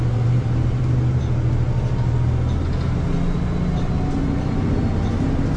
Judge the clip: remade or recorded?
recorded